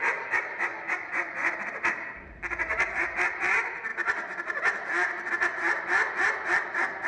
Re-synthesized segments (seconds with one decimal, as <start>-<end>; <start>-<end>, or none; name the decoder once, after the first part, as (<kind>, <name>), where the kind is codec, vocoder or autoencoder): 0.7-1.5 (vocoder, Vocos)